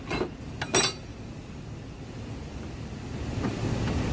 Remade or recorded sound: recorded